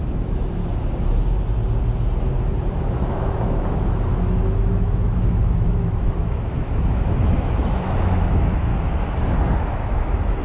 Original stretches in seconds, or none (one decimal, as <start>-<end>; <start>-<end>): 0.6-2.7; 8.7-9.6